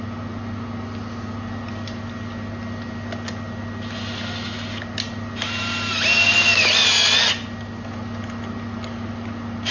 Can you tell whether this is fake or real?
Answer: real